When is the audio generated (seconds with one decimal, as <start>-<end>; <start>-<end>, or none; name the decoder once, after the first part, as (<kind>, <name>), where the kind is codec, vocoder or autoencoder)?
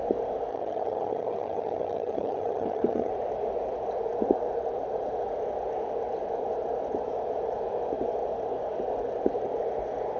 0.5-3.1 (vocoder, HiFi-GAN)